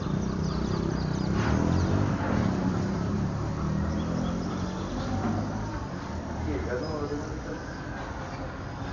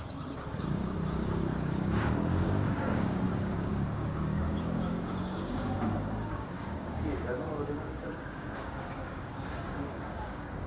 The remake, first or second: second